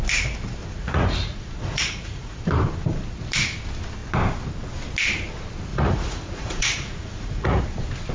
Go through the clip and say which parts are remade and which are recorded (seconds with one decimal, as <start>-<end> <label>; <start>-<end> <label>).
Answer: 0.0-0.6 recorded; 0.6-2.4 remade; 2.4-5.7 recorded; 5.7-7.6 remade; 7.6-8.1 recorded